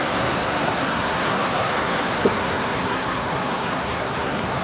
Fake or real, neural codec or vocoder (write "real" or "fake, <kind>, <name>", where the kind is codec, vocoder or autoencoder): fake, codec, SNAC